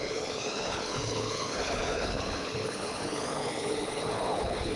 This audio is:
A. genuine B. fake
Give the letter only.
B